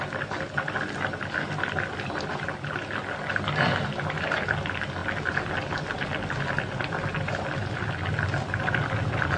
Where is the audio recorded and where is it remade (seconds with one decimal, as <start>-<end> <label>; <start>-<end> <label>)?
0.0-9.4 recorded